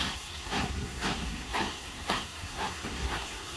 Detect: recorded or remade remade